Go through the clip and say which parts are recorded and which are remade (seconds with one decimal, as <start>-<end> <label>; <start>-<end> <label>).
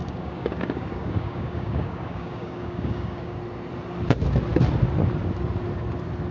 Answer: 0.0-3.4 remade; 3.4-6.3 recorded